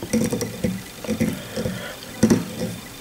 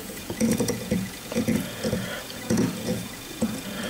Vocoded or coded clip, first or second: second